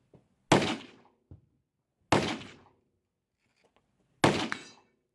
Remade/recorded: recorded